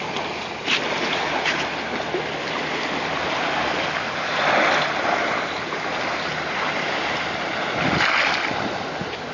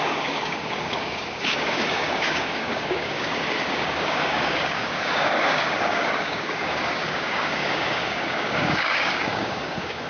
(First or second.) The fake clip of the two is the second